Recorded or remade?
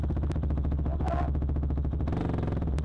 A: recorded